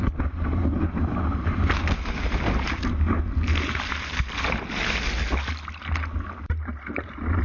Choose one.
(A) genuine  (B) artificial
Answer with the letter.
A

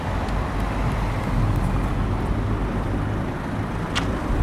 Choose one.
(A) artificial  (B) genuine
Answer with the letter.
B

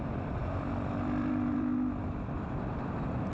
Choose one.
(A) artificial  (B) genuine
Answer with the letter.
A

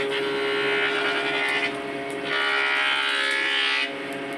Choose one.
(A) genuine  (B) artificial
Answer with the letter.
A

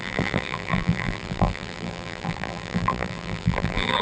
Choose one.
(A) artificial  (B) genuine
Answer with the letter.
A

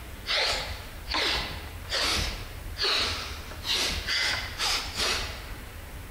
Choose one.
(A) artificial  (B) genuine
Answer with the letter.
A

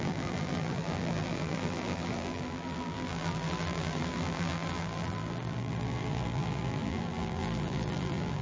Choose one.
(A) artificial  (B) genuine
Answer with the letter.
A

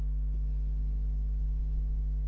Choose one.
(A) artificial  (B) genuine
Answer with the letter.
B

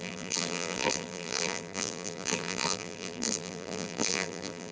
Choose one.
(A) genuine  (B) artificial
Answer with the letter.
B